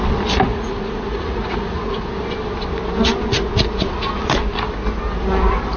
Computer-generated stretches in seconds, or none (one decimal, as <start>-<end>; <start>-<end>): 0.5-2.1